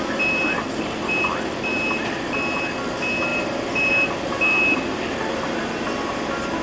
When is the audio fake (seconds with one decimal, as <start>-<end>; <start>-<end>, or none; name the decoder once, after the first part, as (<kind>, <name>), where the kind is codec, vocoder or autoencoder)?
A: none